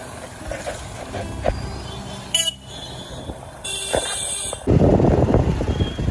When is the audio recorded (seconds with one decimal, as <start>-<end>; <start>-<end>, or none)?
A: 0.0-6.1